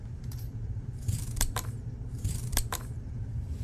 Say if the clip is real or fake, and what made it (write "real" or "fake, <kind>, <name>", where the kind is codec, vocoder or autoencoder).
fake, vocoder, BigVGAN v2